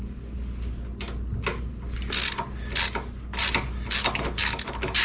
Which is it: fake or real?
real